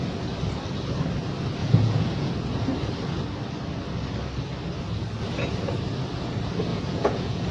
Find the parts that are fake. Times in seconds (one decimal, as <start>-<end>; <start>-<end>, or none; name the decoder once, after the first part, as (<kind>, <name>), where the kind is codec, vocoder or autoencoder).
1.6-2.3 (vocoder, Vocos); 6.7-7.5